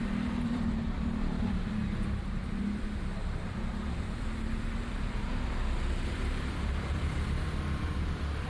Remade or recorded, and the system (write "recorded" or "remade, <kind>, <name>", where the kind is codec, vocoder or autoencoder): remade, vocoder, BigVGAN v2